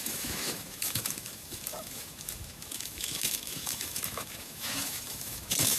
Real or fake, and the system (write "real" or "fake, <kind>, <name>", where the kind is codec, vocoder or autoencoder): fake, autoencoder, DAC-VAE